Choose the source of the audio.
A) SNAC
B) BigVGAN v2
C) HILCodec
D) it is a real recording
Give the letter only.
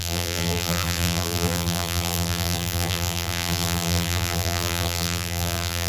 B